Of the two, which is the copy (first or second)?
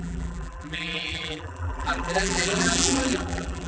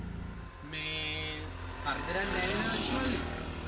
first